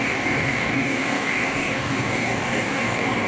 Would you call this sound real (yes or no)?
no